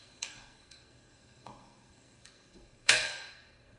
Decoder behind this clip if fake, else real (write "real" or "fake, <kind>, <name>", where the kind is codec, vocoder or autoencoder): fake, codec, SNAC